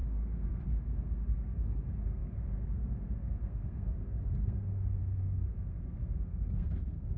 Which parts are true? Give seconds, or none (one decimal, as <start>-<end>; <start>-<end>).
none